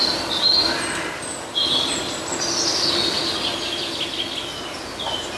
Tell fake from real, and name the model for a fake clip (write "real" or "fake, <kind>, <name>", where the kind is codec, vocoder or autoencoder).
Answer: real